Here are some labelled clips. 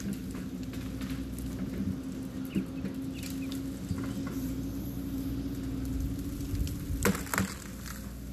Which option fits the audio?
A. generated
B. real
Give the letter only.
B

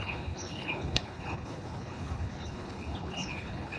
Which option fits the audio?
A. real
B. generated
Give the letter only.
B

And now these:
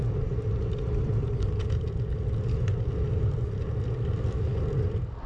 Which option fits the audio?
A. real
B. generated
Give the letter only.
A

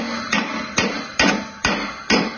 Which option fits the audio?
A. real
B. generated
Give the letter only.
A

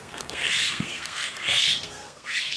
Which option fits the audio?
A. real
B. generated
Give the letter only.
B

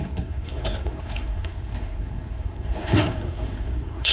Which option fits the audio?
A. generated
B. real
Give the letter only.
A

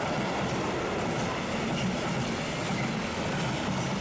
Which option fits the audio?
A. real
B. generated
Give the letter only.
A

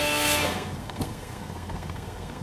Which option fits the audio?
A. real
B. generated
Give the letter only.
B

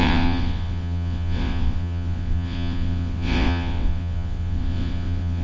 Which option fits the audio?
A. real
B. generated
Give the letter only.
B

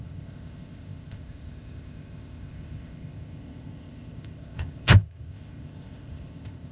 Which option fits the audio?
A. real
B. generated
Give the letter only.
B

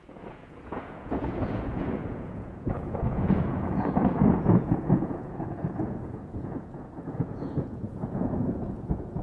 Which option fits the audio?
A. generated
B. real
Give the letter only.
A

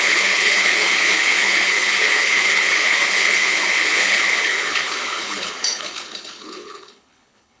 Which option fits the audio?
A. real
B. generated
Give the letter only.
B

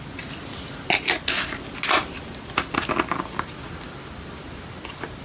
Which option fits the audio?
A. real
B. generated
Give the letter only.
A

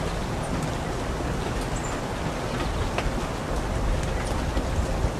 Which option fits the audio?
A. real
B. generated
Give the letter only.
A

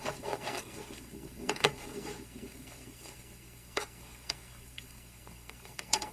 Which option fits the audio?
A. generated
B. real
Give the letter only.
A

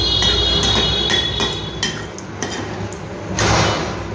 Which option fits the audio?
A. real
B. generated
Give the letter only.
A